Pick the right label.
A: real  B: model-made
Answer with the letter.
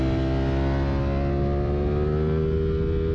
A